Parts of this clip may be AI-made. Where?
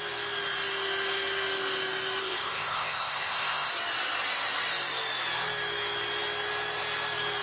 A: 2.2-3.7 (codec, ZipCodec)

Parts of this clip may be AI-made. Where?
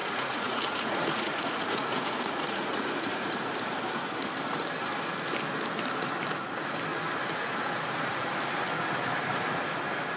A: 0.0-3.3 (vocoder, Vocos)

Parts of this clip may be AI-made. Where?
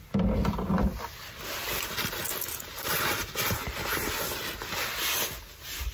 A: none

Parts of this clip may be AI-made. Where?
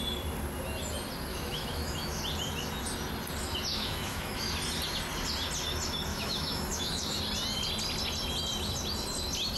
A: 1.3-2.2 (autoencoder, DAC-VAE); 3.7-4.5; 6.1-7.2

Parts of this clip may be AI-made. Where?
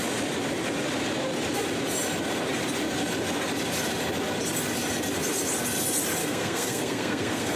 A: 6.2-7.6 (codec, SNAC)